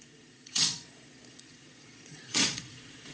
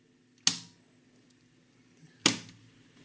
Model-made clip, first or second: first